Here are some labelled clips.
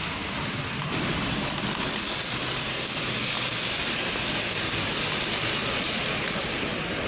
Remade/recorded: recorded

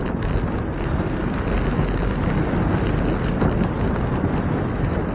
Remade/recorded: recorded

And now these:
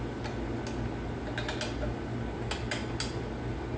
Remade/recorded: recorded